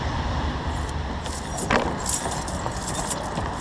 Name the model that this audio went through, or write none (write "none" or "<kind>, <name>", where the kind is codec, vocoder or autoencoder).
none